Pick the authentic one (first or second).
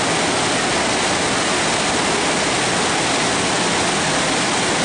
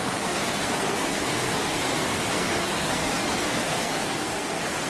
first